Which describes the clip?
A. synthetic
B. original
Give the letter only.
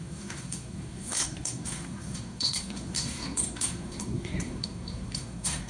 A